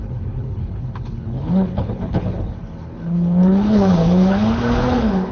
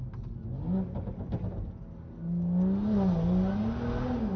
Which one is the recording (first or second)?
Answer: second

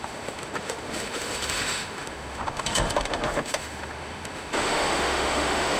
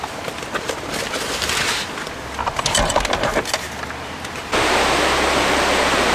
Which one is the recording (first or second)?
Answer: second